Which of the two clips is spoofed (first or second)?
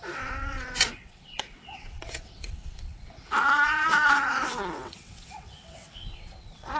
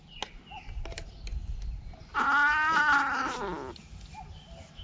first